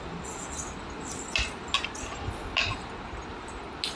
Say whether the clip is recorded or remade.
recorded